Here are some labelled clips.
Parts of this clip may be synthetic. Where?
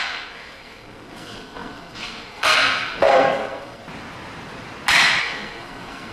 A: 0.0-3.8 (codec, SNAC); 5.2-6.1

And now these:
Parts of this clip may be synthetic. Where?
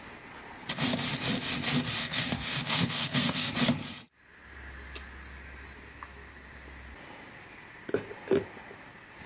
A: 2.0-3.5 (codec, SNAC)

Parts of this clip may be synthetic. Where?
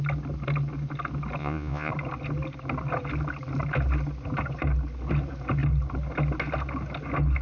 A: 1.4-1.9 (vocoder, Vocos)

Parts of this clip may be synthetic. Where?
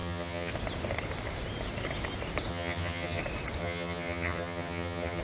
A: 0.0-0.5 (vocoder, HiFi-GAN); 2.5-3.2; 3.6-5.2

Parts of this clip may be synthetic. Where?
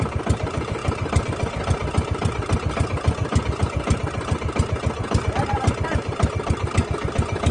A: none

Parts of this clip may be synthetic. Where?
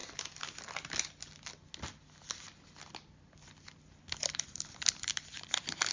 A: none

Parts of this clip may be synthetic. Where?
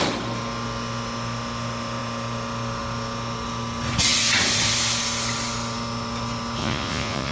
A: 6.6-7.3 (vocoder, Vocos)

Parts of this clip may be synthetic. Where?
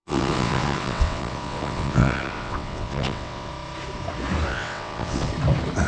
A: 0.0-3.5 (vocoder, WaveNeXt); 4.5-5.3